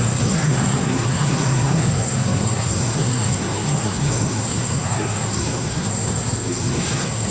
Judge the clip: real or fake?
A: fake